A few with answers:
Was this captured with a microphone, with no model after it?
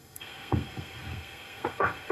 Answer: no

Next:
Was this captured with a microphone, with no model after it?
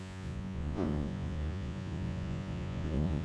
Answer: no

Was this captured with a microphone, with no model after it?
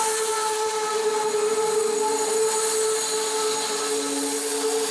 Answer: yes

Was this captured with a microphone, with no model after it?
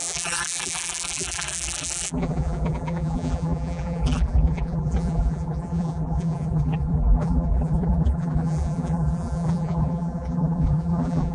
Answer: no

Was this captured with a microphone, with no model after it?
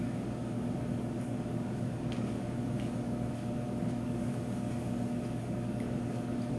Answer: no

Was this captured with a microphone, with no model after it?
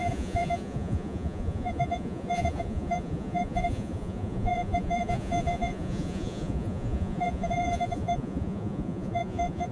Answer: no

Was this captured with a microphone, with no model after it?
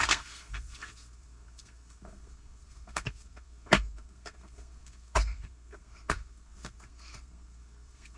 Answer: no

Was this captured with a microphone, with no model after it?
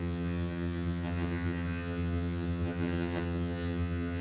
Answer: no